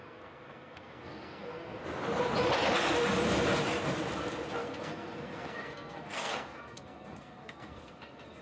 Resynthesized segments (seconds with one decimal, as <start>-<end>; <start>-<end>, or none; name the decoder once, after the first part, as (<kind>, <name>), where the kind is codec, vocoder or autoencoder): 0.0-1.8 (codec, SNAC); 4.6-8.4